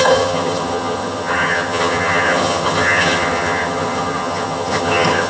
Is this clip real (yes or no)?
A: no